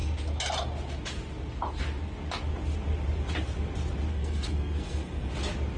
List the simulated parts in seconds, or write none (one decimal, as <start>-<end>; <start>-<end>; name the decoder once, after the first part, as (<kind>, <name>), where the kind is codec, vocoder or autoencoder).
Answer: 4.1-5.3 (codec, SNAC)

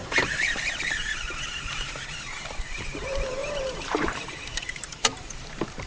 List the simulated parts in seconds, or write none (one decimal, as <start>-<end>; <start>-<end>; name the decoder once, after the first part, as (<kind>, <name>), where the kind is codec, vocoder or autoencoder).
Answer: 0.0-5.9 (vocoder, BigVGAN v2)